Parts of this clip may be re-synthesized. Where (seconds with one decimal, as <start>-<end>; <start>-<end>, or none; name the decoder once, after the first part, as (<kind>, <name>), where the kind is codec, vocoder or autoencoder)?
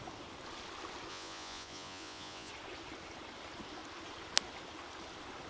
1.1-2.5 (vocoder, Vocos)